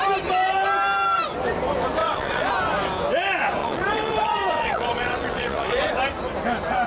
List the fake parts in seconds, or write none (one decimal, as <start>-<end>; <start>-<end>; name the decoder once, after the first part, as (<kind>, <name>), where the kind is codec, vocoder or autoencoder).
2.0-2.5 (vocoder, WaveNeXt); 3.6-5.9